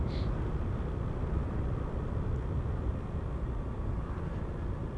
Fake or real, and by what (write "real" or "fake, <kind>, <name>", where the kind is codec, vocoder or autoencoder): real